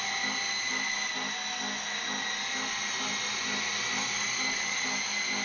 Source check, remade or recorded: recorded